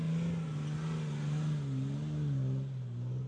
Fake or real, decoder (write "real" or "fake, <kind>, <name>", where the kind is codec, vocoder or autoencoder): real